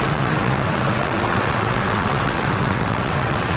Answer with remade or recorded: remade